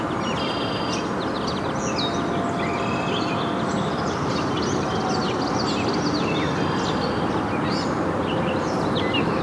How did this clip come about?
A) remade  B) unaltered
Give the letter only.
B